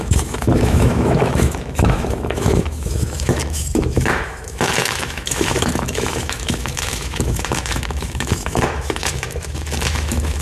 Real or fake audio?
fake